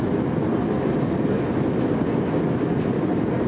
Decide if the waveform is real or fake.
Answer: real